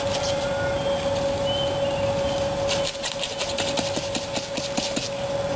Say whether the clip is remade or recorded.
recorded